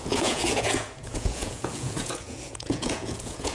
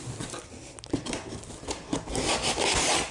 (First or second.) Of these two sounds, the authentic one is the second